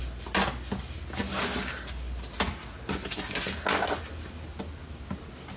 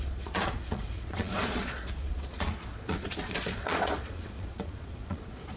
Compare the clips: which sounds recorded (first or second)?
first